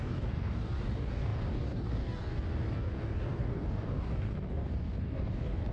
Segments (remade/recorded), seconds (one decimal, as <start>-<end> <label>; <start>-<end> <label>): 0.0-5.7 remade